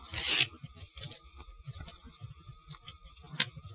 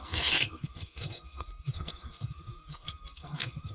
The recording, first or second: first